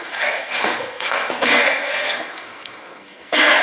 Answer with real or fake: fake